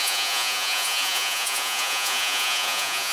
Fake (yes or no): yes